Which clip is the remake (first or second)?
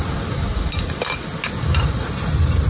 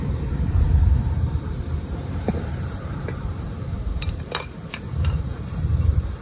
second